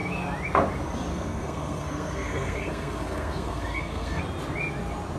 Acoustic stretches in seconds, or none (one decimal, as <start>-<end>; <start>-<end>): 0.0-1.1; 4.2-5.2